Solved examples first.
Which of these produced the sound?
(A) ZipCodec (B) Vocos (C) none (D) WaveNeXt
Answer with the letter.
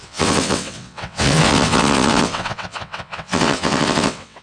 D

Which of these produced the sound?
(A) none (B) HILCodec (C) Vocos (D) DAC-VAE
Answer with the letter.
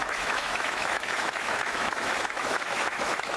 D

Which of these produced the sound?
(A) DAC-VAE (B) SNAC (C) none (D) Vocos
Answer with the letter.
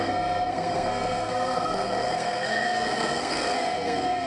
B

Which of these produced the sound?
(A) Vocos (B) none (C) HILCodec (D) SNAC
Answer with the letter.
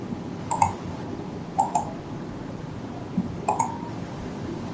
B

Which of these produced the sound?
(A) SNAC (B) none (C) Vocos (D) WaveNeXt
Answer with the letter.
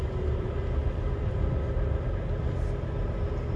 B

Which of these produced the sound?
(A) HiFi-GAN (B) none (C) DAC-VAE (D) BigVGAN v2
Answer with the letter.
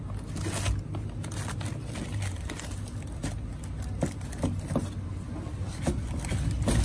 B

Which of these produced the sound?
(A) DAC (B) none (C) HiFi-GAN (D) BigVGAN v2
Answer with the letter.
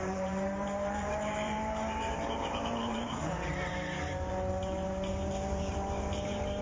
D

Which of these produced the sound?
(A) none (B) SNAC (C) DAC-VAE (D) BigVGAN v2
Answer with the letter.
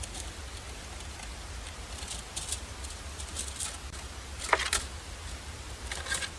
A